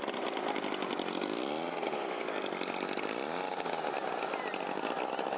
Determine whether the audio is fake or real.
real